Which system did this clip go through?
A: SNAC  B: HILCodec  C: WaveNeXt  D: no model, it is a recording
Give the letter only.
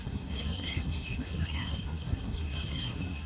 A